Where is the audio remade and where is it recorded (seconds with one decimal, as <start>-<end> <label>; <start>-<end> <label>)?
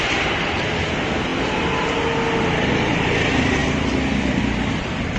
0.0-5.2 recorded